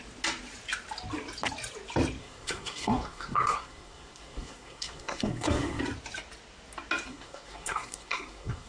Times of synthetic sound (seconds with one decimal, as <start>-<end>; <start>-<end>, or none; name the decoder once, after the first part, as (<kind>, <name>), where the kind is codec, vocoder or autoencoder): 2.2-5.8 (codec, SNAC); 7.1-8.7